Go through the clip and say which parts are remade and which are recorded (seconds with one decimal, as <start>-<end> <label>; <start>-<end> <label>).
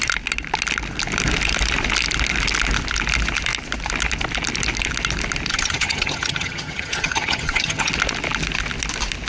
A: 0.0-5.5 recorded; 5.5-7.9 remade; 7.9-9.3 recorded